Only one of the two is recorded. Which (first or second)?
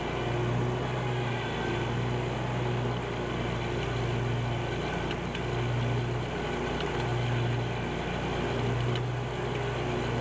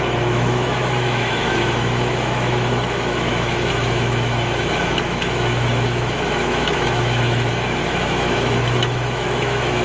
first